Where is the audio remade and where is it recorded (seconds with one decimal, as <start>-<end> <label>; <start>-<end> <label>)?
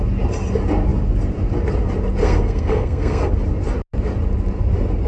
0.0-2.2 recorded; 2.2-3.3 remade; 3.3-5.1 recorded